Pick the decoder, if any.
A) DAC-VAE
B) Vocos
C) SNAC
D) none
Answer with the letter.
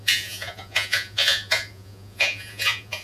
B